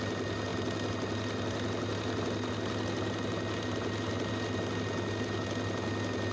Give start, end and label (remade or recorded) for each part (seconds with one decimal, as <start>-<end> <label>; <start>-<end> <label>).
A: 0.0-6.3 recorded